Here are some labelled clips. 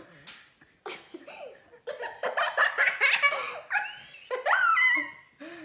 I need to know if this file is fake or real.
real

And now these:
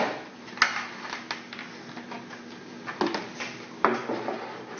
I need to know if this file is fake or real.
real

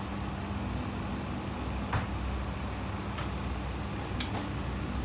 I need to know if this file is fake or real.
real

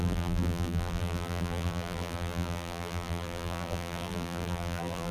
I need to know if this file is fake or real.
fake